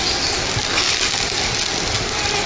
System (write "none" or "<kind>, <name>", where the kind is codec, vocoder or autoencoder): none